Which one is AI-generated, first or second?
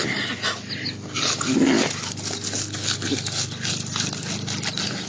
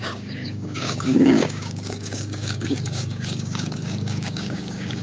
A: second